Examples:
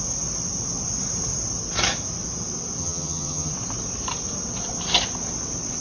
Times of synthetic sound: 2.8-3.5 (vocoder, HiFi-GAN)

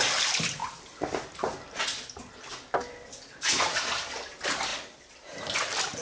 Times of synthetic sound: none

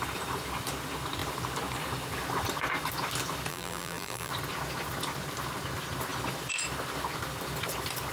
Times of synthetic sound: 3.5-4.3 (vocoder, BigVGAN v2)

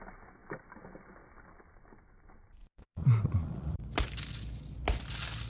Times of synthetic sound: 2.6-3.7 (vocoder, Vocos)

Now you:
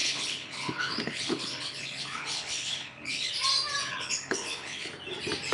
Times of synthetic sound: 0.0-3.3 (codec, HILCodec); 3.8-4.9